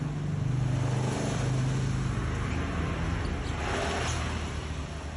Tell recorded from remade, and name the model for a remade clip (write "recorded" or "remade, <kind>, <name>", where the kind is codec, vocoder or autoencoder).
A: recorded